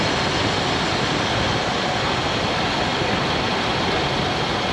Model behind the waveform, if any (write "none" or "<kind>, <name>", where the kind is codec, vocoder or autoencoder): none